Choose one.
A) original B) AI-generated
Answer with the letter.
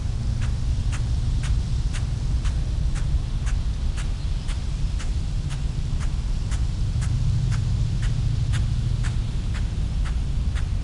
A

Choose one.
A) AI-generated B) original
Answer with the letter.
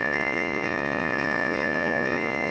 A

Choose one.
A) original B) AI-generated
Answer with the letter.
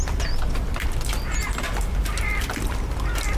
A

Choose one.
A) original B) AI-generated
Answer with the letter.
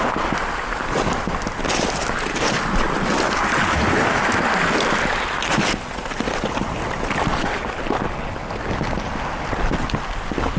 A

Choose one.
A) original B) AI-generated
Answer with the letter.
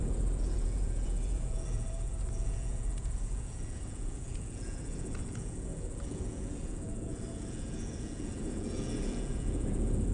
B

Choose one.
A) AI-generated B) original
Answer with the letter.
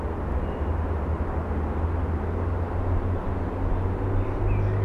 B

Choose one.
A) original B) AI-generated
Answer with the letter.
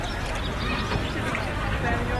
A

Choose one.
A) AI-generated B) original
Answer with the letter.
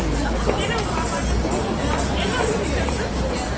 B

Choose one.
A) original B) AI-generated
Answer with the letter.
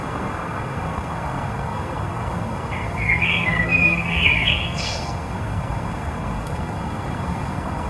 B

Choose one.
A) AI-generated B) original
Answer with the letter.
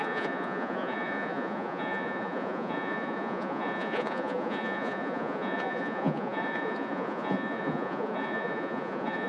A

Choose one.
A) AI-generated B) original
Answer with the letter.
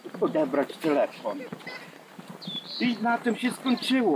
B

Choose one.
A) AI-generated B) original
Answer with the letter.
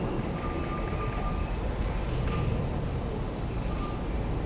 B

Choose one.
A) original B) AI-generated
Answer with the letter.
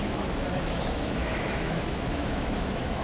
B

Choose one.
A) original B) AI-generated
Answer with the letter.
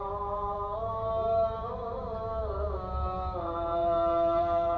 B